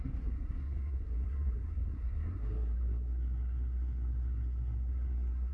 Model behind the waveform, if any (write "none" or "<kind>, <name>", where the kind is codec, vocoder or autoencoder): codec, SNAC